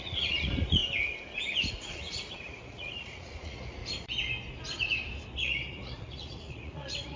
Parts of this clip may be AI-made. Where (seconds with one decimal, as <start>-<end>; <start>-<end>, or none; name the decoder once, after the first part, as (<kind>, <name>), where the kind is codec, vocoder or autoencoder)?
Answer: 0.0-0.8 (vocoder, Vocos); 1.7-3.8; 5.4-7.2